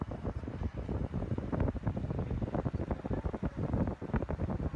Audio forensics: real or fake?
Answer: real